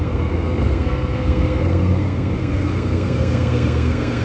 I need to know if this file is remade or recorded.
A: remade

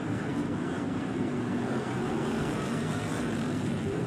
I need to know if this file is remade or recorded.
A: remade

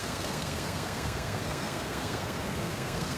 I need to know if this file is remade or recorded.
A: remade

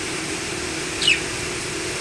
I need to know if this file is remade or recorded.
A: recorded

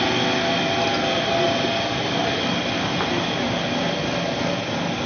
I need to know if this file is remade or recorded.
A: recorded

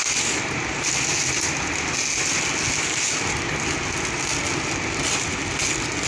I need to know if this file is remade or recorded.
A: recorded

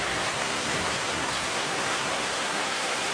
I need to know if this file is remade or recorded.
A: remade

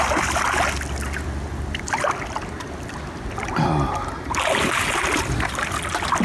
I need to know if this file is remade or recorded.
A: recorded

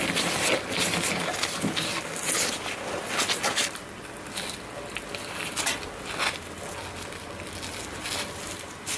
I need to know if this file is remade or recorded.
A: recorded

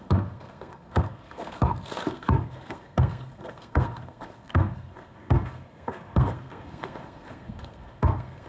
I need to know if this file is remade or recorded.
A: remade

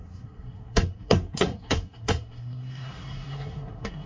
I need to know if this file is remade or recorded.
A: remade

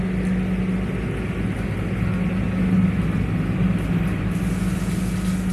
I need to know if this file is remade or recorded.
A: recorded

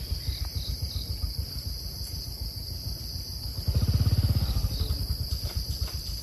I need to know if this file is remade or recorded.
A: recorded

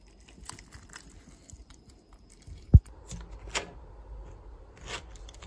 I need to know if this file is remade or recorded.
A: recorded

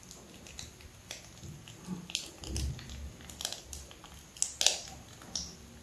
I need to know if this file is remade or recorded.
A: recorded